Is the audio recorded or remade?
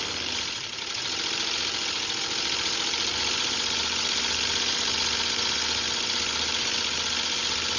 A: recorded